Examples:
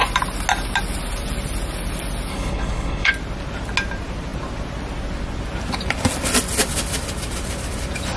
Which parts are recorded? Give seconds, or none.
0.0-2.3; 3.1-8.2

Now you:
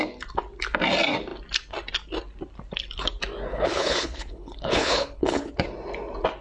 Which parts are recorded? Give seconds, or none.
0.0-3.5; 5.5-6.4

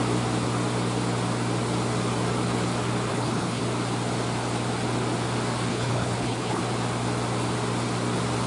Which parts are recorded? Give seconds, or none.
0.0-3.1; 3.6-5.7; 6.6-8.5

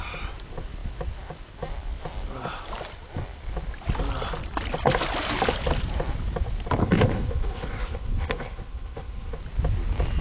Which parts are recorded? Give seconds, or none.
0.0-6.8; 9.4-10.2

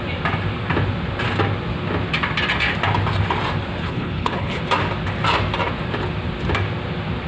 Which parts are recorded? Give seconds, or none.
0.0-3.8; 4.6-7.3

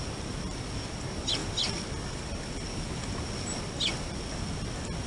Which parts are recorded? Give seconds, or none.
0.0-5.1

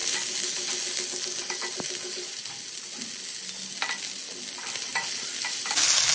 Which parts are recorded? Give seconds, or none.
0.0-6.1

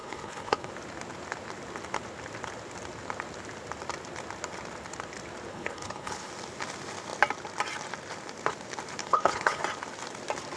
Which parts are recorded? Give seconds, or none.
0.7-5.5; 6.3-9.0; 9.6-10.6